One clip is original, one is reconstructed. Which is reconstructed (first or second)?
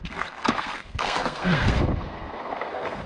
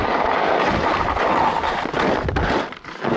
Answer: first